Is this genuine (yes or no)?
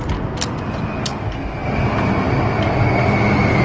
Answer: yes